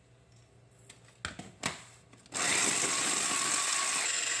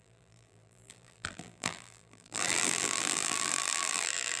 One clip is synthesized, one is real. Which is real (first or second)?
first